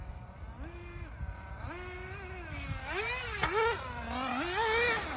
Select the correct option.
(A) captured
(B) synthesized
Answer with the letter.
A